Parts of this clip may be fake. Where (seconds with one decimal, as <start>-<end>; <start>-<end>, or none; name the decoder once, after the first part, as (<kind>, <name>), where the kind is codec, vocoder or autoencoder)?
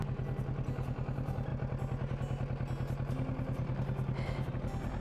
none